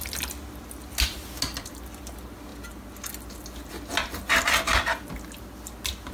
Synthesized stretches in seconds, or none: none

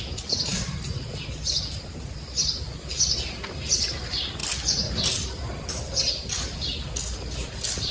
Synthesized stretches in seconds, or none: none

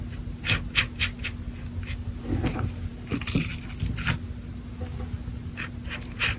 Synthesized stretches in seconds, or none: none

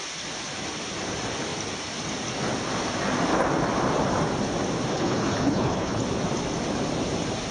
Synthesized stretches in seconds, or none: 4.9-6.0 (codec, HILCodec)

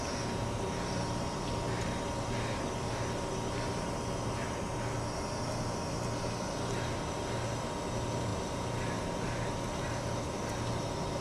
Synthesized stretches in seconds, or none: none

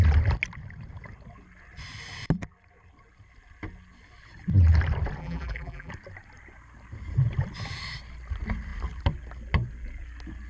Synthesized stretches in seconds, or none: 5.2-5.9 (vocoder, BigVGAN v2)